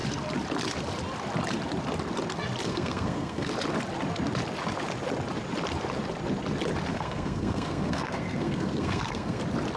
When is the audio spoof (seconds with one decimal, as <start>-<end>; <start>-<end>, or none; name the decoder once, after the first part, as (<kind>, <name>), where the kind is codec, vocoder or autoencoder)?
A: 2.7-3.5 (codec, SNAC); 6.9-9.4